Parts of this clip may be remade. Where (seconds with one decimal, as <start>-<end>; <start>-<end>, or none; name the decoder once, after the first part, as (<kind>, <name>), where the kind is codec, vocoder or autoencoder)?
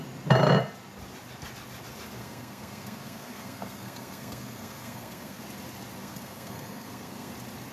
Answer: 2.2-5.4 (codec, SNAC); 6.0-7.3